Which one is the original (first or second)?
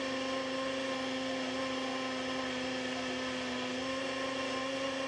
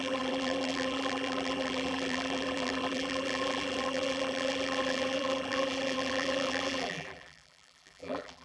first